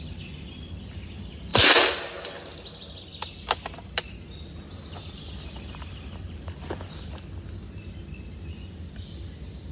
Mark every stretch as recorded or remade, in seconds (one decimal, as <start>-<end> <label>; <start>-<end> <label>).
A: 0.0-9.7 recorded